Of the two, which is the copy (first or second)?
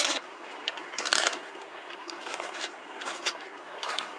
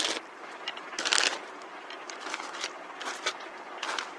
first